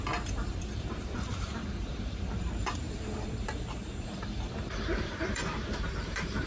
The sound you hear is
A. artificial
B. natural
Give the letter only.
A